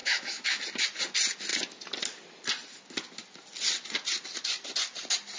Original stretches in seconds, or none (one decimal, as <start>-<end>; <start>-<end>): 0.6-5.4